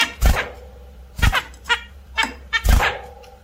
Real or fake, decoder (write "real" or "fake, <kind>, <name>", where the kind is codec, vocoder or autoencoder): fake, vocoder, BigVGAN v2